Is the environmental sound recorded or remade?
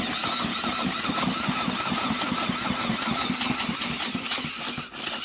recorded